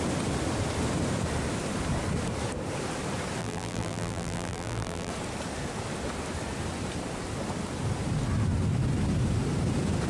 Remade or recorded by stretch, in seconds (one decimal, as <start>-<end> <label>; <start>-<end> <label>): 0.0-3.4 recorded; 3.4-5.1 remade; 5.1-10.1 recorded